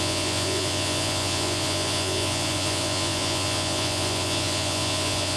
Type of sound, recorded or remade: remade